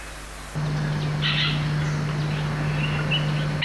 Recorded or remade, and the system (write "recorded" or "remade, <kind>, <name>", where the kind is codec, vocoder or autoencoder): recorded